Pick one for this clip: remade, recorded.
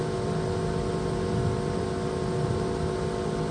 recorded